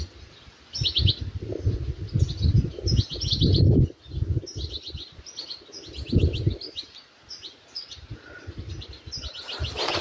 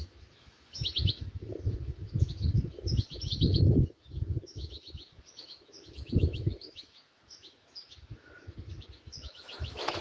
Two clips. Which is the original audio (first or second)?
first